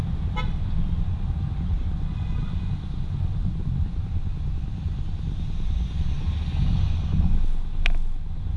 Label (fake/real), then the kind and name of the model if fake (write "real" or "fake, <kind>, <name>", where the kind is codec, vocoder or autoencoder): real